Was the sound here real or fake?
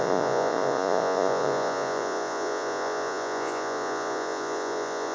fake